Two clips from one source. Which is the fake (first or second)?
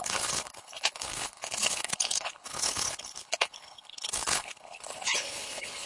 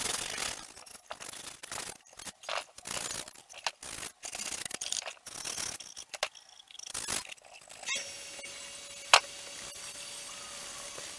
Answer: first